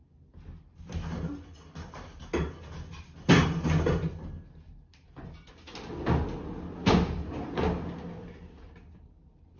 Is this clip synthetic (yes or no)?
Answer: no